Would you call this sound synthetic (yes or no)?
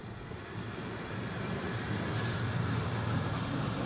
no